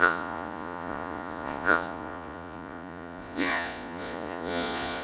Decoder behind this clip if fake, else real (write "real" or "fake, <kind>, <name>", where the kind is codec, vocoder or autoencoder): fake, vocoder, Vocos